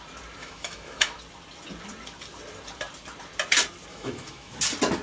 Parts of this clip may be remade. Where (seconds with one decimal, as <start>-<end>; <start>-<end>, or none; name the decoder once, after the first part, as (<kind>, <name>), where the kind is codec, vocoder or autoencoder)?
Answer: 0.4-1.2 (autoencoder, DAC-VAE); 3.9-4.5